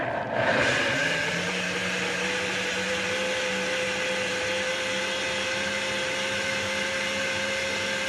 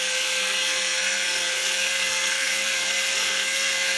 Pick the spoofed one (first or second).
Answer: second